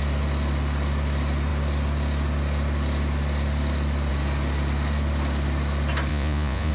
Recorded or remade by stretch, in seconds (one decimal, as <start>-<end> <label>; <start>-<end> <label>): 0.0-6.1 recorded; 6.1-6.7 remade